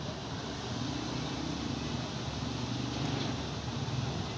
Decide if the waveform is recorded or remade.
recorded